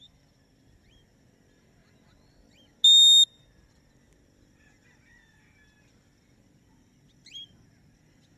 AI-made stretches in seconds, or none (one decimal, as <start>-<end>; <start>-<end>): none